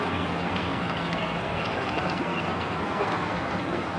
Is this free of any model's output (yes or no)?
no